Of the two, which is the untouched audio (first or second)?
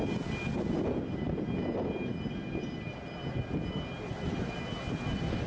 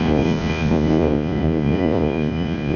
first